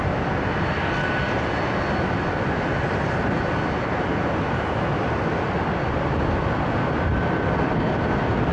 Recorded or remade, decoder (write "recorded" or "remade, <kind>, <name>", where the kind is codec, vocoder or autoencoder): recorded